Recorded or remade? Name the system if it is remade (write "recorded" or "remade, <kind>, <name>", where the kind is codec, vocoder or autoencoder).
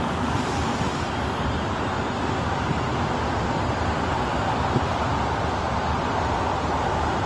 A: recorded